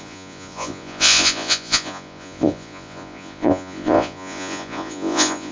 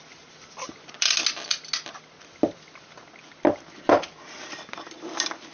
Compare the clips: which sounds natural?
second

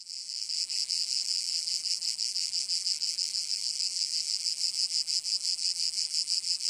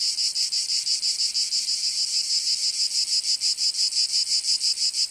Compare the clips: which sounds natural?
second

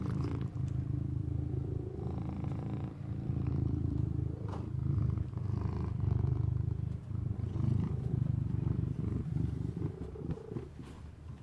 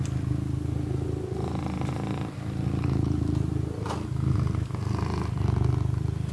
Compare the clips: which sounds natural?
second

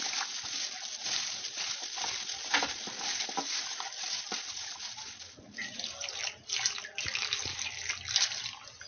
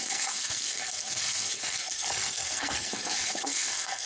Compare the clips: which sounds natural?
first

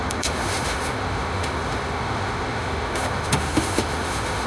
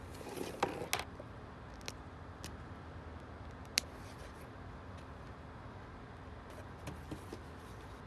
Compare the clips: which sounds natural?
second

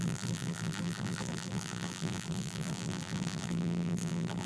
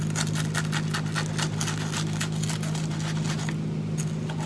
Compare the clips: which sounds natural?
second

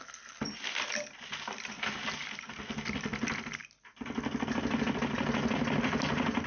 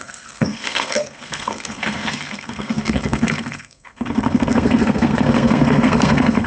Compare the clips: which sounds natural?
first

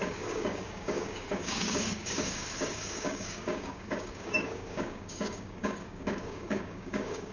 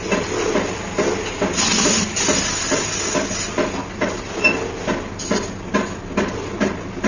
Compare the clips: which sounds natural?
second